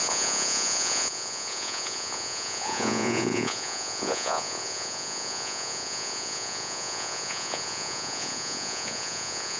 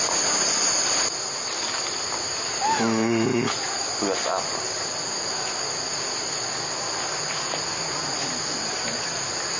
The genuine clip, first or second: second